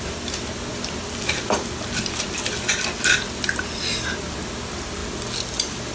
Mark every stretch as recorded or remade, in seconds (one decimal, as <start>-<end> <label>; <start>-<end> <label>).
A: 0.0-5.9 recorded